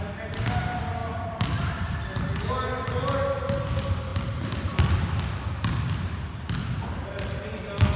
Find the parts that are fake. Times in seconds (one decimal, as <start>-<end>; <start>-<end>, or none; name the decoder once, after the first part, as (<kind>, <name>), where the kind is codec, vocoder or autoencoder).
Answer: none